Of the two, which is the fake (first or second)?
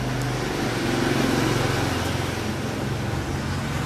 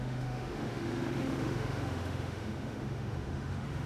second